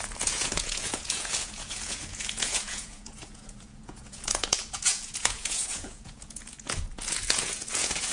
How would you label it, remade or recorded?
remade